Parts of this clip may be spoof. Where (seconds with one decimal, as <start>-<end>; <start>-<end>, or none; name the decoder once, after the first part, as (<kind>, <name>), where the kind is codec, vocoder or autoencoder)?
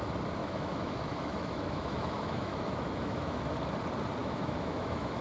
0.4-3.5 (autoencoder, DAC-VAE); 4.2-5.2